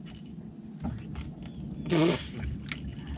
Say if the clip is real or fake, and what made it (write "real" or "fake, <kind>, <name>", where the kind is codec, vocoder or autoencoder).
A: real